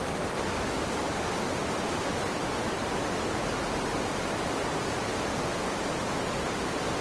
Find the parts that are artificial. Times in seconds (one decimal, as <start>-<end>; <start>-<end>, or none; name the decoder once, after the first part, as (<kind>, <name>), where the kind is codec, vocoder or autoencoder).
0.0-5.1 (vocoder, BigVGAN v2); 5.9-7.0